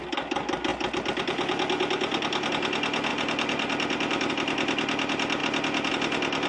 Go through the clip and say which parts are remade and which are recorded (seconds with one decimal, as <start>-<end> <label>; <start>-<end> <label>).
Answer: 0.0-3.1 recorded; 3.1-4.3 remade; 4.3-6.5 recorded